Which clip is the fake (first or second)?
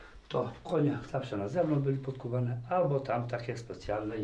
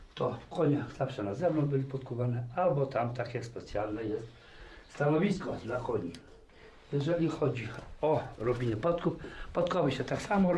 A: second